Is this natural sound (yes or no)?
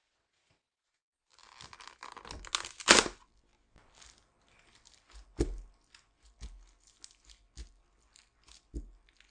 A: yes